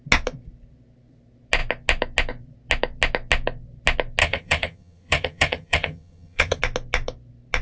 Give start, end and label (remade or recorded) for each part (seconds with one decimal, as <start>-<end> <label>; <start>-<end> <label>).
0.0-4.2 recorded; 4.2-6.6 remade; 6.6-7.6 recorded